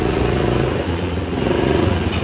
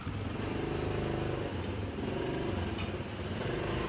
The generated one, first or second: first